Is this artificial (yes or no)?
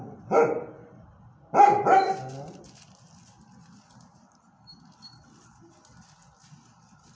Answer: no